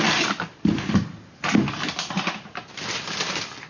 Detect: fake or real real